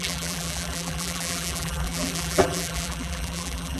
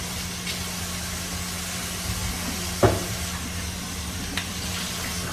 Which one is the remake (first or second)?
first